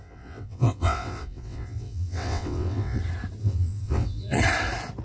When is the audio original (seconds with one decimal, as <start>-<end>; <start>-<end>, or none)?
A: 3.0-3.4; 4.4-5.0